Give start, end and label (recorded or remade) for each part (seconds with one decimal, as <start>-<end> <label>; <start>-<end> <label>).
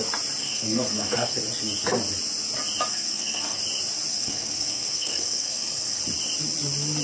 0.0-0.4 recorded; 0.4-1.4 remade; 1.4-2.9 recorded; 2.9-3.6 remade; 3.6-4.1 recorded; 4.1-6.0 remade; 6.0-7.0 recorded